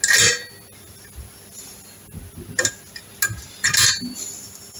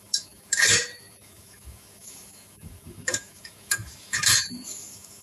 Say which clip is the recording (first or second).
first